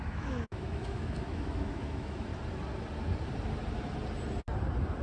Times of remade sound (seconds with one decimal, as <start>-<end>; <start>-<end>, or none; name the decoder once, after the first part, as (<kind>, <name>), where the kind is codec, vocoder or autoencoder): 0.0-2.3 (autoencoder, DAC-VAE)